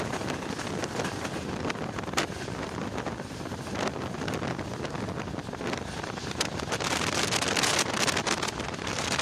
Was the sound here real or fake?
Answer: real